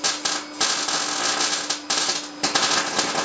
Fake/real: real